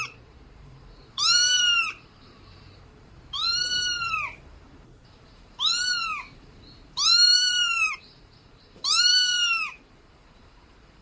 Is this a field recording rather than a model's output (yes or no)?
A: no